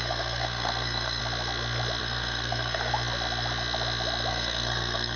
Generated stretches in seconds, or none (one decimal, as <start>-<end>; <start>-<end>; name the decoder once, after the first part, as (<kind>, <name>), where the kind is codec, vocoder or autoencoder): 0.0-1.2 (codec, SNAC); 2.0-2.9; 4.3-5.2